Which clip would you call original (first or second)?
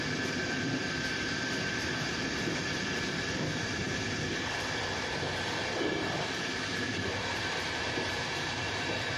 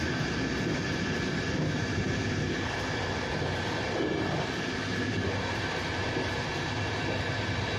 second